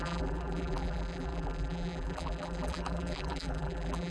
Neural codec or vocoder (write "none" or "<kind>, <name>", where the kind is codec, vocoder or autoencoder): vocoder, BigVGAN v2